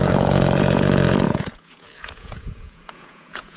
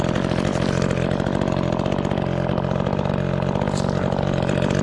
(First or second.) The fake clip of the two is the first